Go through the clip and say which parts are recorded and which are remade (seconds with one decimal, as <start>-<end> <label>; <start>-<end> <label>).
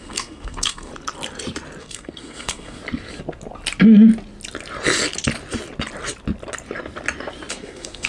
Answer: 0.0-0.9 remade; 0.9-1.8 recorded; 1.8-2.8 remade; 2.8-7.5 recorded; 7.5-8.1 remade